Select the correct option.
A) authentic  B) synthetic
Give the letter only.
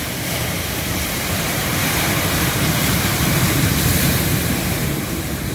B